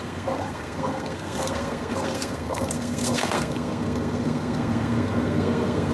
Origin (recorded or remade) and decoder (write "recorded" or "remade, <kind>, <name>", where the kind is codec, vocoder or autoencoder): remade, codec, SNAC